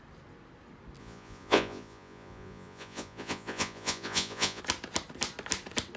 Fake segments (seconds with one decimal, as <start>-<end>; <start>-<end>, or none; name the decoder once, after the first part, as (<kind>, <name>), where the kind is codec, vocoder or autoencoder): 1.0-4.6 (vocoder, Vocos)